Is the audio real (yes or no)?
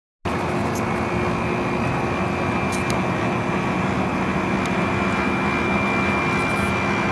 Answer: yes